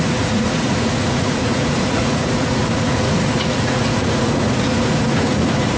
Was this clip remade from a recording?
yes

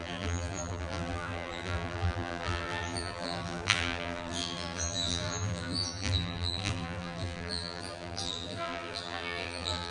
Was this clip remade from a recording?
yes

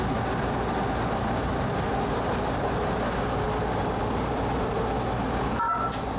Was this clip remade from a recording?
no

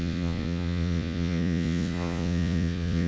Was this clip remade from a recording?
yes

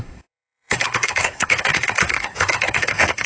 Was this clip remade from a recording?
yes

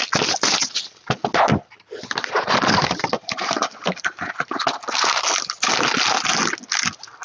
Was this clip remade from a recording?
no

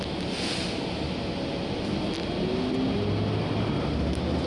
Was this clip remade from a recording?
no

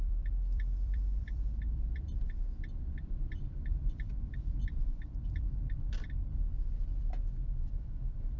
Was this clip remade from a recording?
yes